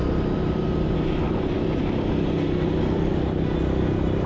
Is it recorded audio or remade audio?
recorded